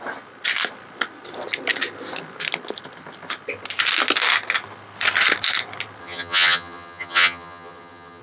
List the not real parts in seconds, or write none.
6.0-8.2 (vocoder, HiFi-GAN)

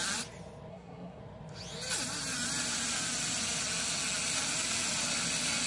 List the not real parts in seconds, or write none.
0.7-1.2 (codec, SNAC)

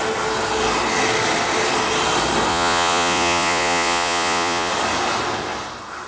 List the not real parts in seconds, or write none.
2.5-4.7 (vocoder, Vocos)